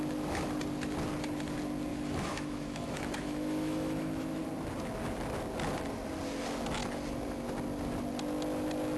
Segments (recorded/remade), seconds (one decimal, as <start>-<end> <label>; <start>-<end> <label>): 0.0-1.9 recorded; 1.9-4.4 remade; 4.4-9.0 recorded